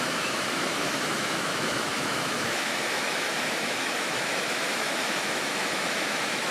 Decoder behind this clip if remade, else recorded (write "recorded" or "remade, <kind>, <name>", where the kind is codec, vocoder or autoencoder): remade, autoencoder, DAC-VAE